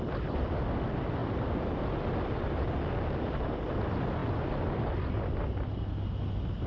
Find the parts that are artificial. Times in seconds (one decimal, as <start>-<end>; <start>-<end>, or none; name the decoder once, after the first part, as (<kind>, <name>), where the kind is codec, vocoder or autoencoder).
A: 1.2-3.8 (vocoder, BigVGAN v2); 4.2-4.9